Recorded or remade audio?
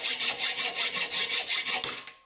recorded